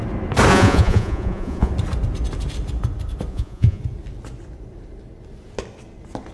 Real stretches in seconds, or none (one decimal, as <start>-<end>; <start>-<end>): 0.0-0.5; 1.7-3.3; 3.8-6.3